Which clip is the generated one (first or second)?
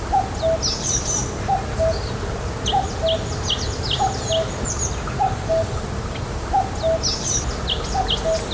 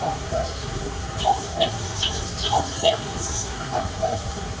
second